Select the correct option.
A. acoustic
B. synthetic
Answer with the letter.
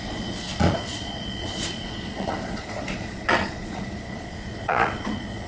B